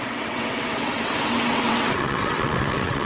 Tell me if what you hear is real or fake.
fake